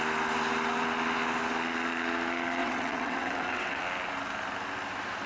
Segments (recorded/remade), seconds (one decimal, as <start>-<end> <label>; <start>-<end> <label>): 0.0-2.6 recorded; 2.6-3.8 remade; 3.8-5.3 recorded